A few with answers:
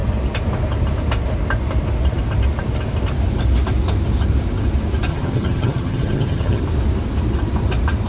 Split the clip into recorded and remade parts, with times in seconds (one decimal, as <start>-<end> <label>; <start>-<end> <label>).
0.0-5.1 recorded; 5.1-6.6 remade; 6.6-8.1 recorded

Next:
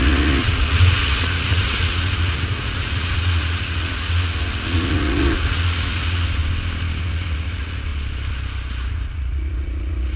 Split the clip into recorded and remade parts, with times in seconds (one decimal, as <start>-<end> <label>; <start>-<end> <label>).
0.0-6.4 remade; 6.4-7.0 recorded; 7.0-7.9 remade; 7.9-8.9 recorded; 8.9-10.2 remade

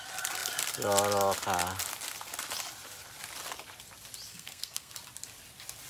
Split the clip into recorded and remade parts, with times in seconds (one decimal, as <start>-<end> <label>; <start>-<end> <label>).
0.0-4.3 recorded; 4.3-4.9 remade; 4.9-5.9 recorded

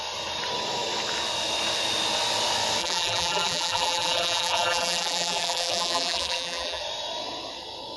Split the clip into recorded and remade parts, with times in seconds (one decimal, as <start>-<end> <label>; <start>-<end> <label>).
0.0-2.8 recorded; 2.8-6.8 remade; 6.8-8.0 recorded

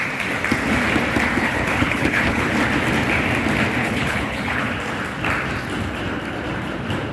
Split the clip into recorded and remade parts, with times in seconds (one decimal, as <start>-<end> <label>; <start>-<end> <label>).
0.0-1.4 recorded; 1.4-2.5 remade; 2.5-3.8 recorded; 3.8-4.7 remade; 4.7-7.1 recorded

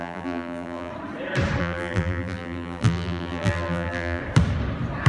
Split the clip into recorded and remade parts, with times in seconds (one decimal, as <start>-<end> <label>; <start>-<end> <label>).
0.0-0.9 remade; 0.9-1.6 recorded; 1.6-4.2 remade; 4.2-5.1 recorded